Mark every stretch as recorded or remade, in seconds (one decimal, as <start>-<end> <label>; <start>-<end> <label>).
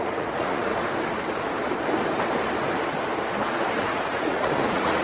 0.0-0.7 remade; 0.7-3.7 recorded; 3.7-5.0 remade